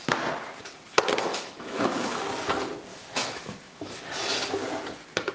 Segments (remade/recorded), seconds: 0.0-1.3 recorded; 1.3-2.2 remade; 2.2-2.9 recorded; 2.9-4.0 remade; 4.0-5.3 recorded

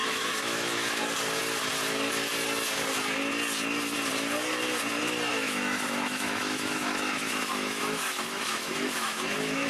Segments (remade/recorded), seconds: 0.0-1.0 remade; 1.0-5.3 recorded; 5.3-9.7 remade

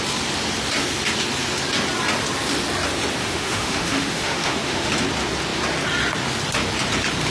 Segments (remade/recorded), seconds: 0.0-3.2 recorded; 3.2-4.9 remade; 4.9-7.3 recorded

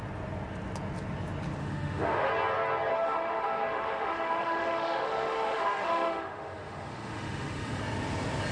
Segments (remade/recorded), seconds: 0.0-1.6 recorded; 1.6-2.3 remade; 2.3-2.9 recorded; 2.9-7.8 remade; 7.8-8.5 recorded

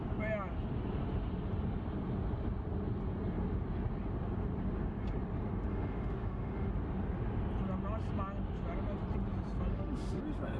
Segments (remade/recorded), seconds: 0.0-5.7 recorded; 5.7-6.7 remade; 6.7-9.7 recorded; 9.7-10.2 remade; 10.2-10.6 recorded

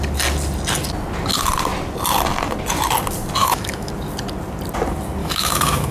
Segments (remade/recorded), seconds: 0.0-3.4 recorded; 3.4-3.9 remade; 3.9-5.2 recorded; 5.2-5.9 remade